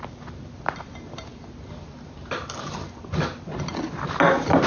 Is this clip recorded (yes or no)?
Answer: yes